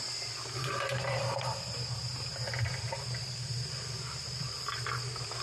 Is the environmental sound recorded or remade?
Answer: recorded